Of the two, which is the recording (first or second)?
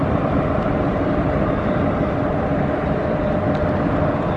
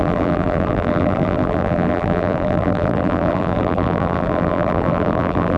first